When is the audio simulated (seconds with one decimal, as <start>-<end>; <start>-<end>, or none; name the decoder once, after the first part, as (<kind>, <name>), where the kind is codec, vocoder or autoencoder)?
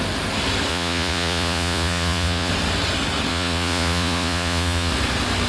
0.7-2.5 (vocoder, Vocos); 3.3-4.9